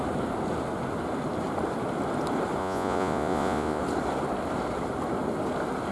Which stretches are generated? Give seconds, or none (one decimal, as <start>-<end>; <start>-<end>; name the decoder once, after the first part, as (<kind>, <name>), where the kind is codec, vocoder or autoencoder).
2.6-3.8 (vocoder, Vocos)